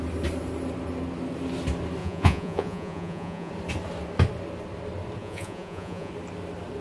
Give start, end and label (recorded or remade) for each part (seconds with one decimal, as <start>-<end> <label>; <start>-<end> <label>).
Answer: 0.0-2.0 recorded; 2.0-3.5 remade; 3.5-5.2 recorded; 5.2-6.1 remade; 6.1-6.8 recorded